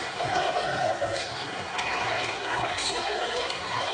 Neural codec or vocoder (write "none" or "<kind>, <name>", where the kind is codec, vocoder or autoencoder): codec, SNAC